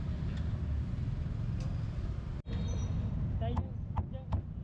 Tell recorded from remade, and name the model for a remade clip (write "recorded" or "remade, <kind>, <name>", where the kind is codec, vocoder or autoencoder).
recorded